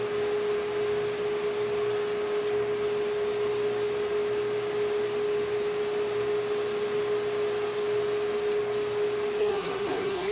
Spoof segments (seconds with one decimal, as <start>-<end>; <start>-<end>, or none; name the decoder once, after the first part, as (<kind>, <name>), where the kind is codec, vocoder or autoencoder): 9.4-10.3 (codec, SNAC)